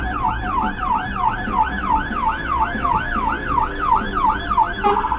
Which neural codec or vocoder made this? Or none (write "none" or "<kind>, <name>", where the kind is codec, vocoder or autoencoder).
none